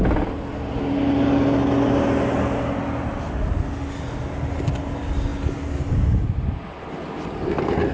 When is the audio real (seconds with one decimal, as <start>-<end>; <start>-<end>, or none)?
0.0-7.9